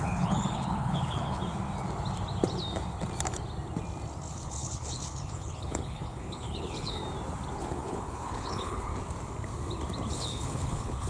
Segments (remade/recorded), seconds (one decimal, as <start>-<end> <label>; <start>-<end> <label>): 0.0-1.4 remade; 1.4-4.3 recorded; 4.3-7.0 remade; 7.0-7.6 recorded; 7.6-8.9 remade; 8.9-10.1 recorded; 10.1-11.1 remade